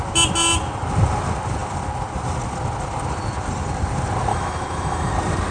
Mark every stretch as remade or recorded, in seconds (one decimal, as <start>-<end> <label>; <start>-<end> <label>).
0.0-4.3 recorded; 4.3-5.1 remade; 5.1-5.5 recorded